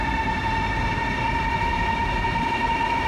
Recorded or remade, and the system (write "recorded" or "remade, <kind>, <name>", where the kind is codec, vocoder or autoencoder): recorded